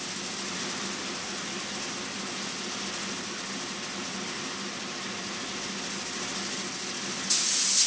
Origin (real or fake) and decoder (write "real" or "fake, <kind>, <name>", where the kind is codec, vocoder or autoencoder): real